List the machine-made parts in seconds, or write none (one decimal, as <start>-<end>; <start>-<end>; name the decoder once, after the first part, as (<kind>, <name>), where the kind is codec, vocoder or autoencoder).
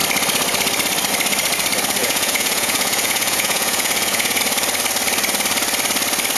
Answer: 2.0-4.4 (vocoder, Vocos)